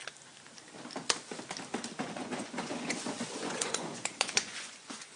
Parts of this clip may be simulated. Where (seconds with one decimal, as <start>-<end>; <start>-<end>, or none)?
2.0-5.2